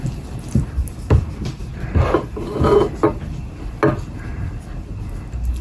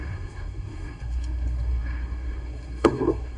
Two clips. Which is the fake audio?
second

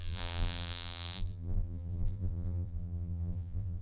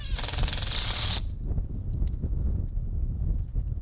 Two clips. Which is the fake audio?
first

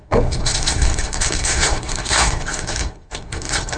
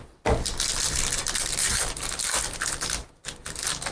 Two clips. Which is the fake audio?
first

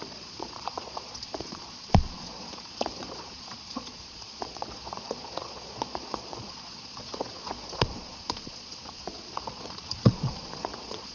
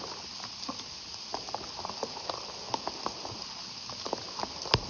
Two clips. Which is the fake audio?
first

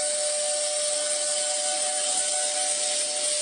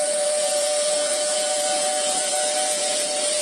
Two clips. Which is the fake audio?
second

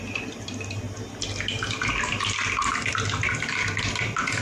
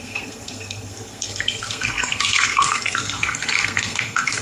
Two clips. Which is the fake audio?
second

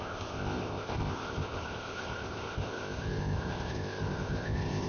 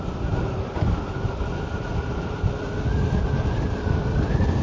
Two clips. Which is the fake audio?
first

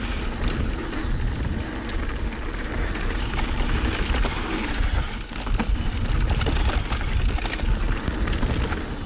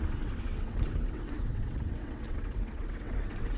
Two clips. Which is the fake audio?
second